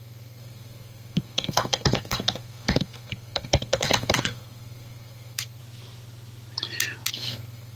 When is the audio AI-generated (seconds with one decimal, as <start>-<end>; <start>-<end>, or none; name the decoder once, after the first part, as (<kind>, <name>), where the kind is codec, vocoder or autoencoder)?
0.0-5.6 (codec, SNAC); 7.1-7.8